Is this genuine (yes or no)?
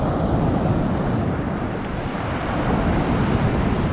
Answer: yes